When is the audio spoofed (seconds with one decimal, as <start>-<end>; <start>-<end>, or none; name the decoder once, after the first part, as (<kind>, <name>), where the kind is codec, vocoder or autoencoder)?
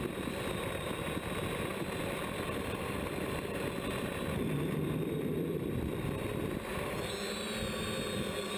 1.7-6.9 (vocoder, BigVGAN v2)